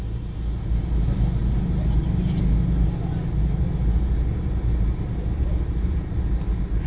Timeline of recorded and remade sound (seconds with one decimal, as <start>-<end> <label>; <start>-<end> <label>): 0.0-6.9 recorded